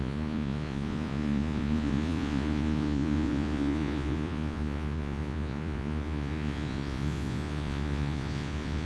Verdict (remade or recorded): remade